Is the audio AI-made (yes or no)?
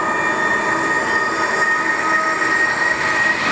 no